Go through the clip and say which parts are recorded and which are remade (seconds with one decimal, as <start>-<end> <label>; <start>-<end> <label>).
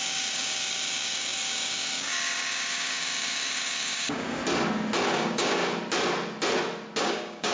0.0-4.4 remade; 4.4-5.1 recorded; 5.1-5.6 remade; 5.6-7.0 recorded; 7.0-7.5 remade